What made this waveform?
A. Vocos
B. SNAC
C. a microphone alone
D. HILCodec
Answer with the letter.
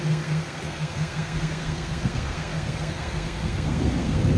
B